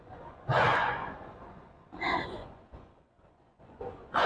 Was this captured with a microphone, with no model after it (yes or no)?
no